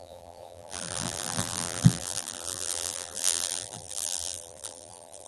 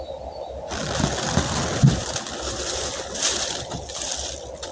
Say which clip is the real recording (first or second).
second